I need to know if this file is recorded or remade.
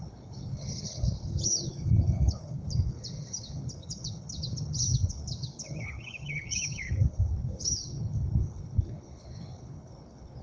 remade